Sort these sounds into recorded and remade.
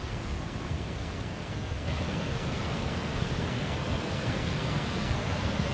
remade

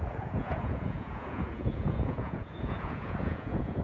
remade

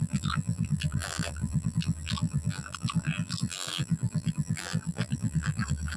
remade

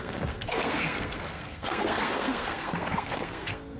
remade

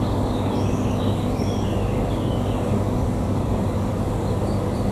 remade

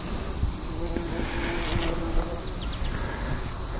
recorded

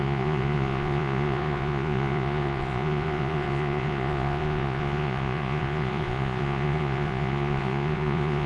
remade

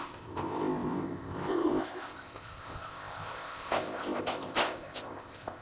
remade